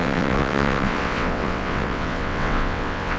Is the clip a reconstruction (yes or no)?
yes